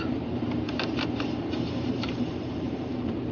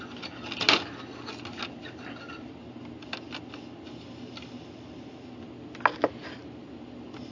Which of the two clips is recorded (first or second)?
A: second